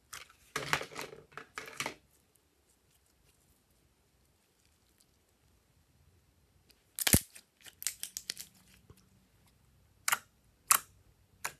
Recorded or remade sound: recorded